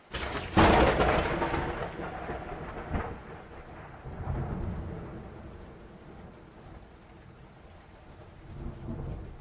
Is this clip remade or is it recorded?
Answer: recorded